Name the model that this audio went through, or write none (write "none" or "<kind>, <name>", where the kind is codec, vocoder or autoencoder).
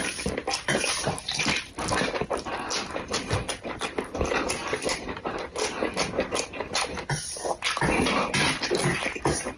none